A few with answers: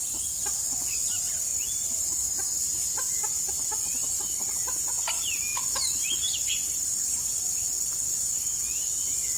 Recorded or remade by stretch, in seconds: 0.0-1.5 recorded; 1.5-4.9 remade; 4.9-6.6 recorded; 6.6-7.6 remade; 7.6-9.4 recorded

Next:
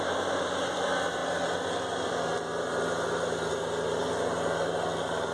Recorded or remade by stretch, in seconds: 0.0-5.3 recorded

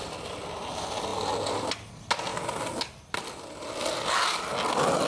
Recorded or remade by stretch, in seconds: 0.0-5.1 recorded

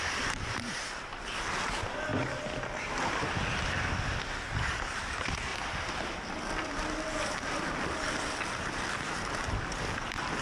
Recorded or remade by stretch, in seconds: 0.0-10.4 recorded

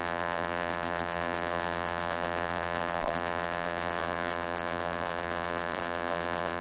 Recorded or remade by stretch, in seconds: 0.0-6.6 remade

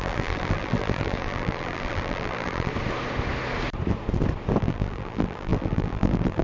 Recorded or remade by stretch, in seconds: 0.0-2.7 remade; 2.7-4.6 recorded; 4.6-6.4 remade

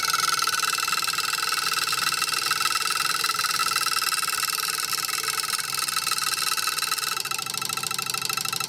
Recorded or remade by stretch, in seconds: 0.0-8.7 recorded

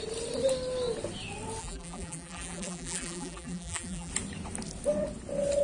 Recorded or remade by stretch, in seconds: 0.0-1.6 recorded; 1.6-4.1 remade; 4.1-5.6 recorded